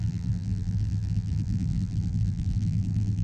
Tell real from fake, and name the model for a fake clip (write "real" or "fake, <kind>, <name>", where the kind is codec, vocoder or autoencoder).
fake, vocoder, BigVGAN v2